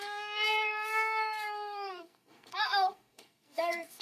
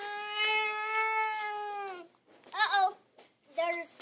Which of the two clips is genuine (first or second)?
second